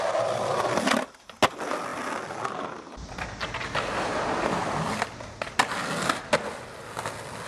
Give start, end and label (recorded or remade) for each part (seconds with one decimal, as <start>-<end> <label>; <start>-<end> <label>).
0.0-7.5 recorded